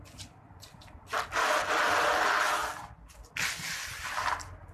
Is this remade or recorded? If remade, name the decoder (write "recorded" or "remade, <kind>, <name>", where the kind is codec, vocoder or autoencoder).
recorded